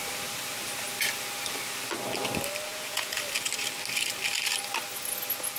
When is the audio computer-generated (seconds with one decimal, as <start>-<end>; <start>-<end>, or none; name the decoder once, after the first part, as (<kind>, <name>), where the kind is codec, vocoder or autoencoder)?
2.7-3.2 (vocoder, Vocos)